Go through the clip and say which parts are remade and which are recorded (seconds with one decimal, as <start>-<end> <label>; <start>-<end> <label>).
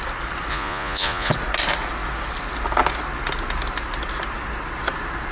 0.0-0.5 recorded; 0.5-1.3 remade; 1.3-5.3 recorded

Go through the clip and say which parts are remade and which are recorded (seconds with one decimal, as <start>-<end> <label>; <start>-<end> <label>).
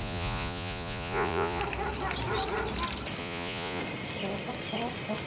0.0-1.6 remade; 1.6-3.2 recorded; 3.2-3.8 remade; 3.8-5.3 recorded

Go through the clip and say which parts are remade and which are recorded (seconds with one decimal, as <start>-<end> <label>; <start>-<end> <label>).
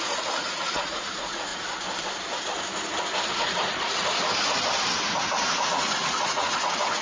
0.0-1.5 remade; 1.5-5.7 recorded; 5.7-7.0 remade